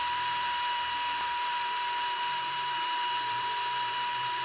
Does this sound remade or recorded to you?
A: remade